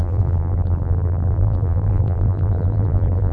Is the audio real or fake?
fake